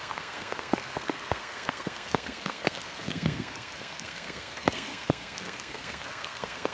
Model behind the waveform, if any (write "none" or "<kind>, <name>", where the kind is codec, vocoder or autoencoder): codec, SNAC